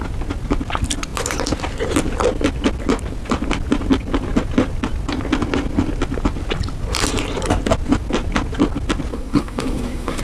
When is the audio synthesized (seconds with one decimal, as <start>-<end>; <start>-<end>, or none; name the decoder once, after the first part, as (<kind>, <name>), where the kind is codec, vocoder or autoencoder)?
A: 9.1-10.2 (codec, SNAC)